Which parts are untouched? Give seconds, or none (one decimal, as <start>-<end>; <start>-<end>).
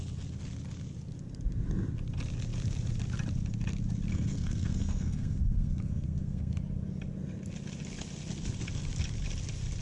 0.0-4.1; 6.5-9.8